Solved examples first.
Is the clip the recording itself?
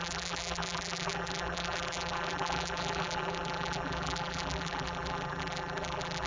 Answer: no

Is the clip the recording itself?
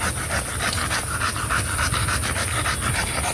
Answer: yes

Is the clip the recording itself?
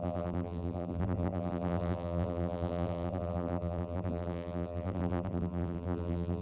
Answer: no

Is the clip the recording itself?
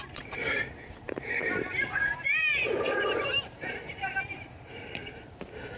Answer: no